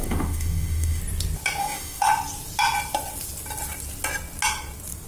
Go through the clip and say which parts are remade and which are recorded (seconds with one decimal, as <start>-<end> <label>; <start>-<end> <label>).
0.0-1.0 remade; 1.0-1.6 recorded; 1.6-2.1 remade; 2.1-5.1 recorded